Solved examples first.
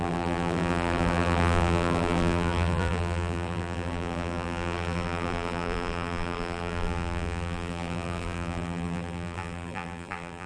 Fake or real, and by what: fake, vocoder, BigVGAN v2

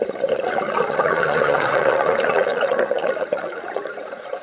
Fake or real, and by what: fake, vocoder, Vocos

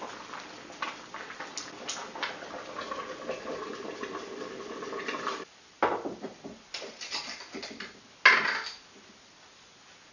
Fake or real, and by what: real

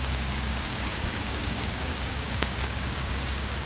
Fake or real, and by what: fake, codec, DAC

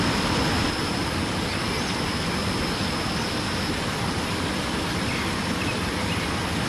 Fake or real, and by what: real